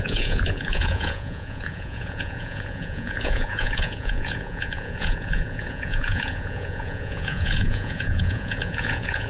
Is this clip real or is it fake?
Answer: fake